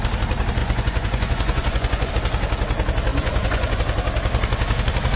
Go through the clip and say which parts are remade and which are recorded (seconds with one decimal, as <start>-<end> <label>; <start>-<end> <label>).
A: 0.0-0.6 recorded; 0.6-2.1 remade; 2.1-3.1 recorded; 3.1-3.8 remade; 3.8-5.2 recorded